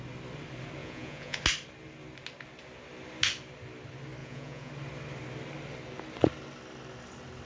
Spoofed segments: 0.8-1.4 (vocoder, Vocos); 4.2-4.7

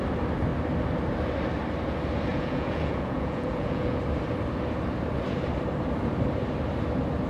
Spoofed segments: 2.3-4.0 (vocoder, Vocos)

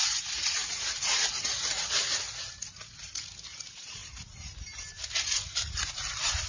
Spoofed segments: 0.0-2.2 (vocoder, Vocos)

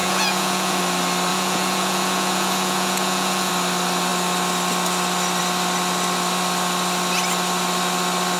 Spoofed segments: 0.0-0.8 (vocoder, Vocos); 1.3-3.5

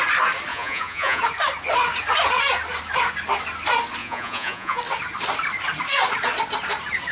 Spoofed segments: 0.5-1.2 (vocoder, Vocos); 4.0-4.8

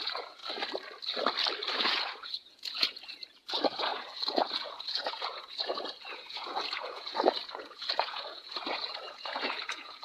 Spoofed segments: 0.0-0.4 (vocoder, Vocos); 1.7-10.0

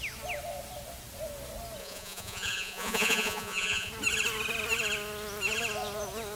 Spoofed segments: 1.8-3.9 (vocoder, Vocos)

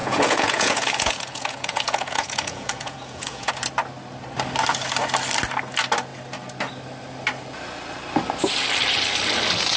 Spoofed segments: 0.0-3.5 (vocoder, Vocos)